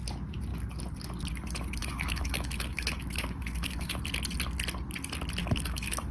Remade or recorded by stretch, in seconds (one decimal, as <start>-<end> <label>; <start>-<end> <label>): 0.0-1.8 recorded; 1.8-4.0 remade; 4.0-5.4 recorded; 5.4-6.1 remade